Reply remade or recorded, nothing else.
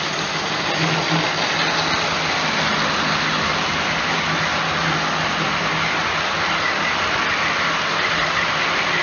recorded